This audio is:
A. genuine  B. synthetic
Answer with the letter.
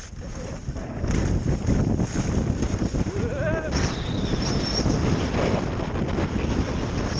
A